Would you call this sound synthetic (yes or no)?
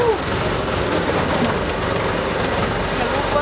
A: no